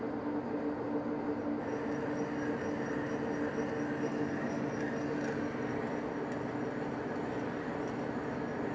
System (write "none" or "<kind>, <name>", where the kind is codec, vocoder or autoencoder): none